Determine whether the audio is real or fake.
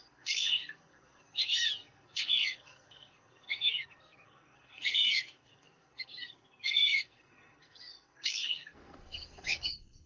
fake